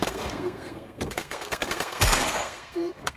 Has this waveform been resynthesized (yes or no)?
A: yes